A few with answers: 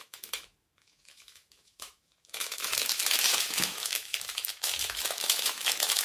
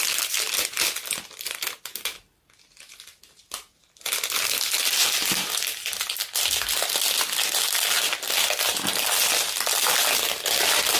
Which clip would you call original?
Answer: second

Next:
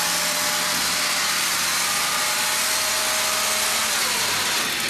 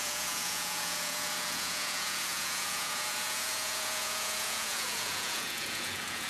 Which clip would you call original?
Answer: first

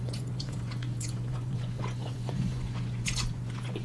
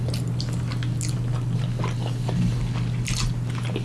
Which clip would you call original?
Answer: second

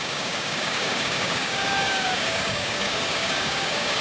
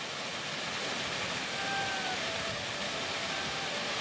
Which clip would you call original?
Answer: second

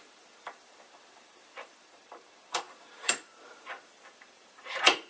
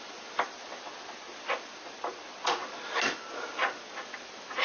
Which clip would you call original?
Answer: second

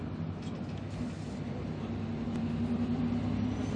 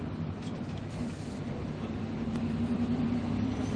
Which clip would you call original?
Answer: first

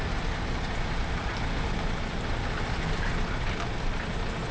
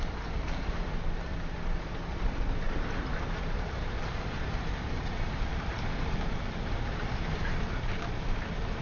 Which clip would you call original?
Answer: first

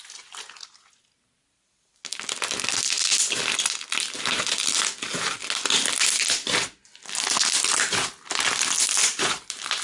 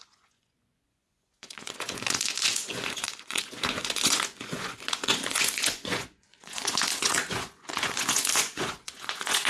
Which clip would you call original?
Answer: first